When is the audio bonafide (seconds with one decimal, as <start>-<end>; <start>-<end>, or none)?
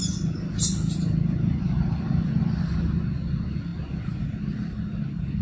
0.0-5.4